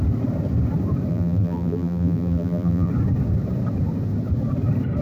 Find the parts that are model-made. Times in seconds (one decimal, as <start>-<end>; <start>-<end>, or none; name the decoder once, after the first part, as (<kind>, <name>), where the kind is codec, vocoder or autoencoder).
1.1-2.9 (vocoder, BigVGAN v2)